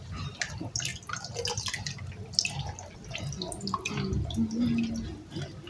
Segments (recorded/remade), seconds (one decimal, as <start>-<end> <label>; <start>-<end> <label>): 0.0-5.7 recorded